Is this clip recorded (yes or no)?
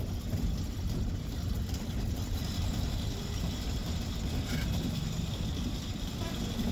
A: no